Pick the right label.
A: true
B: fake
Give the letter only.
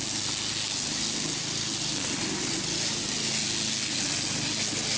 A